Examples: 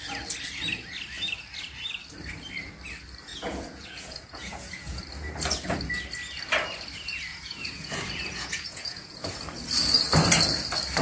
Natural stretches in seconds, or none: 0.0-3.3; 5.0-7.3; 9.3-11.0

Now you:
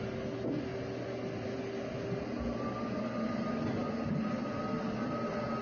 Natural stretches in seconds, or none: 0.0-5.6

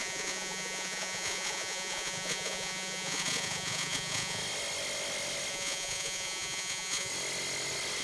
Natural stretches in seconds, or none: 4.4-5.5; 7.1-8.0

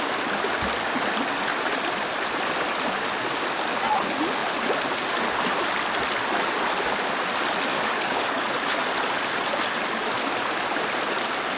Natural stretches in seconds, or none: 0.0-7.7; 8.5-11.6

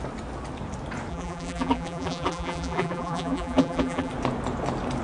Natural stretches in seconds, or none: 0.0-1.1; 4.1-5.0